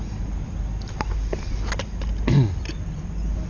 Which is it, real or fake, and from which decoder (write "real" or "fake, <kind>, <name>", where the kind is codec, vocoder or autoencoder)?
real